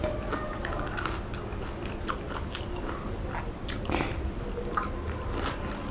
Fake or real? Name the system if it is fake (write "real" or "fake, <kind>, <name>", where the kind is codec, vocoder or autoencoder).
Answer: real